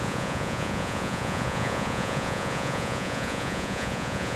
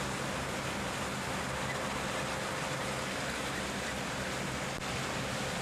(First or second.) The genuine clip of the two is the second